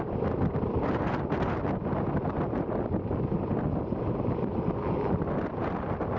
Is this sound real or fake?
real